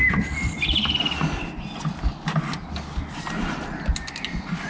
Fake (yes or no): no